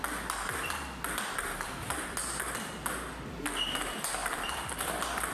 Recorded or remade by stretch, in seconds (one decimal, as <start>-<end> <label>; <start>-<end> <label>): 0.0-1.2 recorded; 1.2-2.2 remade; 2.2-3.7 recorded; 3.7-5.3 remade